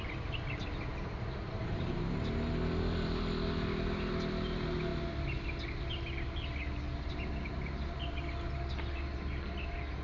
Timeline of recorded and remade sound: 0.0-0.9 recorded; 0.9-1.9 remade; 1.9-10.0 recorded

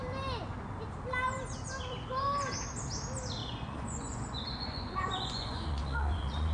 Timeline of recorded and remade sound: 0.0-3.4 recorded; 3.4-6.5 remade

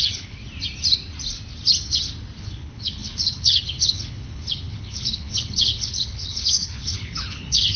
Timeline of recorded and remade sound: 0.0-0.4 remade; 0.4-2.4 recorded; 2.4-7.8 remade

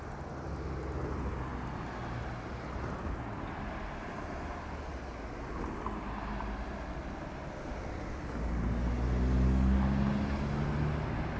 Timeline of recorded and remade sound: 0.0-11.4 recorded

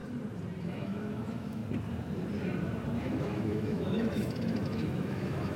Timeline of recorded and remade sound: 0.0-0.6 recorded; 0.6-1.6 remade; 1.6-3.0 recorded; 3.0-5.6 remade

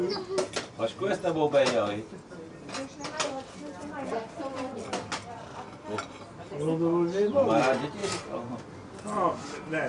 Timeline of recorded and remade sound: 0.0-9.9 recorded

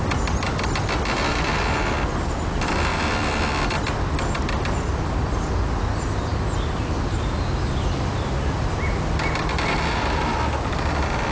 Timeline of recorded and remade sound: 0.0-11.3 recorded